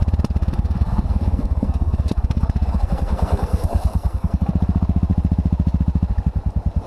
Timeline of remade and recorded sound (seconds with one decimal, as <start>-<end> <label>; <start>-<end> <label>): 0.0-0.4 recorded; 0.4-4.5 remade; 4.5-6.9 recorded